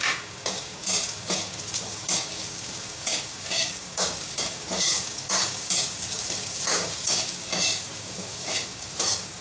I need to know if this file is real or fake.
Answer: fake